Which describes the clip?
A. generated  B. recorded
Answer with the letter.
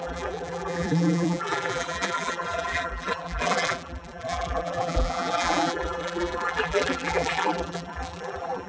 A